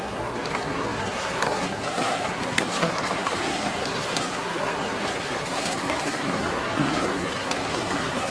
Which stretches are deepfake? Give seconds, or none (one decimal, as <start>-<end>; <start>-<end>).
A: 0.0-8.3